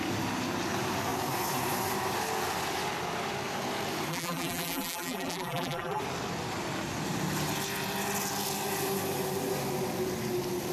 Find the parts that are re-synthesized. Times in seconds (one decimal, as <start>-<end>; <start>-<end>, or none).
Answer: 4.1-6.0